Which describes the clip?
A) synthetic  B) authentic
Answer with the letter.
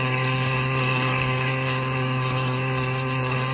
A